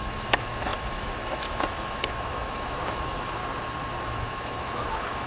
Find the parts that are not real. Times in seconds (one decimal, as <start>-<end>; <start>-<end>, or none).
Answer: 0.0-3.4; 4.0-5.3